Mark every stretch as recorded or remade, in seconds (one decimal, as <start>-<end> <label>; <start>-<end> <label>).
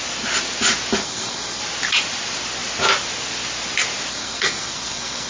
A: 0.0-1.0 recorded; 1.0-1.6 remade; 1.6-4.1 recorded; 4.1-5.3 remade